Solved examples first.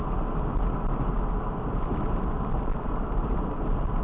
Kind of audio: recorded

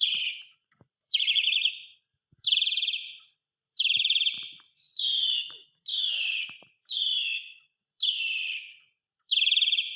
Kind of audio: remade